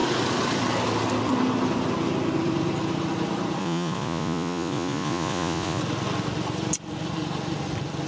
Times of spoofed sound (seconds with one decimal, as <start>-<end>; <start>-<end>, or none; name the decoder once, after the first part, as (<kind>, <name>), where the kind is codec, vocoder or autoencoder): 3.6-5.8 (vocoder, Vocos)